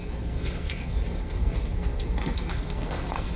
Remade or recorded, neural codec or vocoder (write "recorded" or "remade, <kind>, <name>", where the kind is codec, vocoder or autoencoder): remade, codec, SNAC